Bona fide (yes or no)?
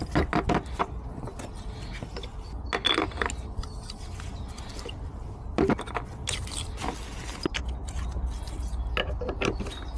yes